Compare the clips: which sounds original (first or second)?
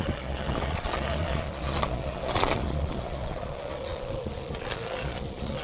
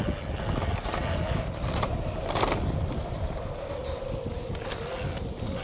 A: second